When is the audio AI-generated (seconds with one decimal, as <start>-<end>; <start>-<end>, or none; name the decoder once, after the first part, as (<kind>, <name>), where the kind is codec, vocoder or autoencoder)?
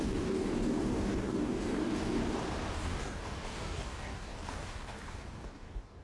0.0-2.2 (codec, DAC); 2.7-6.0